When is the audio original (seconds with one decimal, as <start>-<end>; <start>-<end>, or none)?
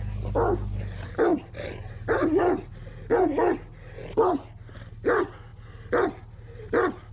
0.0-7.1